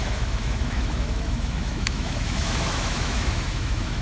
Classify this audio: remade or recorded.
remade